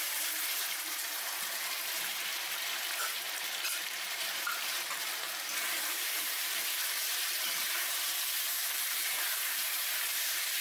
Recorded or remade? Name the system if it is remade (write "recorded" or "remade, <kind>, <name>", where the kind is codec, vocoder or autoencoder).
remade, vocoder, BigVGAN v2